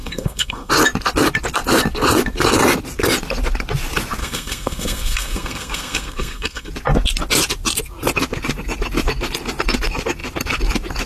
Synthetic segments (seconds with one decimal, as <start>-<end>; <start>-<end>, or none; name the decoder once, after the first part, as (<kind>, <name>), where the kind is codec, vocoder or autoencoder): 0.0-0.7 (codec, SNAC); 4.2-6.7